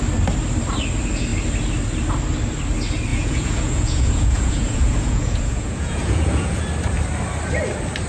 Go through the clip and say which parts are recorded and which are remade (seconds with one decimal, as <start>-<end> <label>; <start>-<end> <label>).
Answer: 0.0-3.1 recorded; 3.1-6.6 remade; 6.6-8.1 recorded